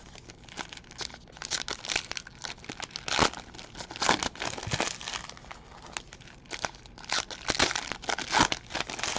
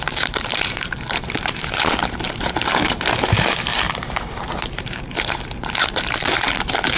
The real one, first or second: first